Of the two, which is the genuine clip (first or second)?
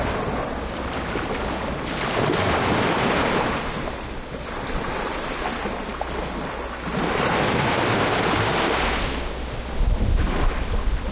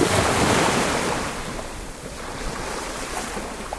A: first